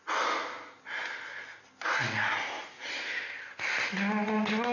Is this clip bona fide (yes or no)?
yes